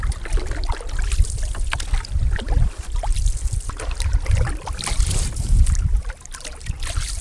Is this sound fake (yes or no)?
no